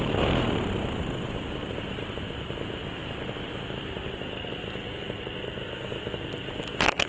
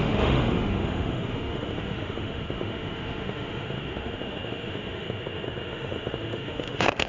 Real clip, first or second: first